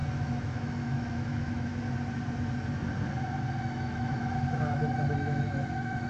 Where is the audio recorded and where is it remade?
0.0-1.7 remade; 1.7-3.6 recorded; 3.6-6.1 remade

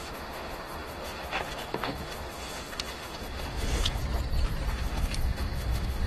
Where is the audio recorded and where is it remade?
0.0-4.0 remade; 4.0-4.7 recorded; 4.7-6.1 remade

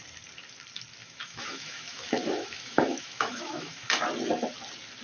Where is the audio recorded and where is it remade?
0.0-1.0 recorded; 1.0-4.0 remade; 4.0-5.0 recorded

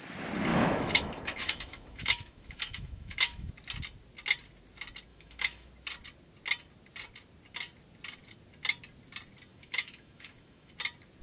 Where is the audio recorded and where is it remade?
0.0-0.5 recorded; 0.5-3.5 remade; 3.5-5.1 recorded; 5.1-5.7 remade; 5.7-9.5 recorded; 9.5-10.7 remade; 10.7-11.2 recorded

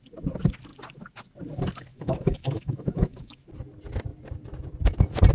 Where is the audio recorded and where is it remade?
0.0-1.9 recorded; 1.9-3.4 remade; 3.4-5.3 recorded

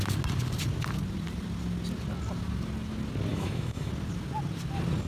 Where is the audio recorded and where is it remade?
0.0-3.3 recorded; 3.3-3.9 remade; 3.9-5.1 recorded

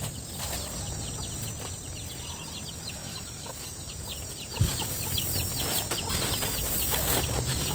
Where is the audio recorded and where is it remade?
0.0-3.0 recorded; 3.0-3.9 remade; 3.9-7.7 recorded